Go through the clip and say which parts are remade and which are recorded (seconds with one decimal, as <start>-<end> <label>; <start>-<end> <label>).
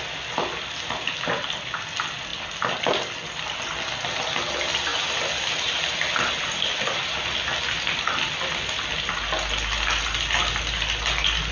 0.0-11.5 recorded